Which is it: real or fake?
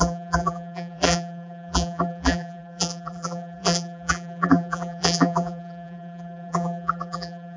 fake